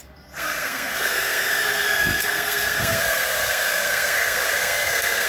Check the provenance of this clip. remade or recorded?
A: remade